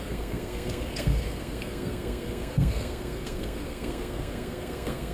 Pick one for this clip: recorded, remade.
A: remade